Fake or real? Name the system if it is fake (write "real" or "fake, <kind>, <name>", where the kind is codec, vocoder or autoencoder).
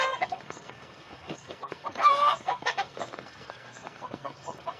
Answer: fake, codec, SNAC